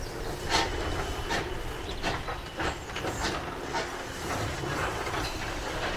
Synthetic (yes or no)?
no